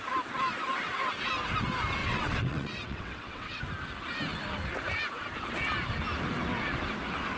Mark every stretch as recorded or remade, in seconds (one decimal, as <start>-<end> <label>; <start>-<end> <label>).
0.0-0.7 recorded; 0.7-1.3 remade; 1.3-2.0 recorded; 2.0-3.6 remade; 3.6-7.4 recorded